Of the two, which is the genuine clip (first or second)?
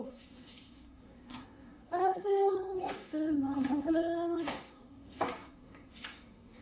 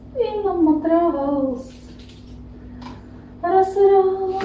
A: second